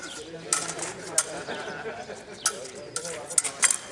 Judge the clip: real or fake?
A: real